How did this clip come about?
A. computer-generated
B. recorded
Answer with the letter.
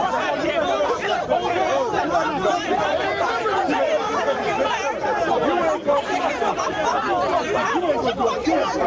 B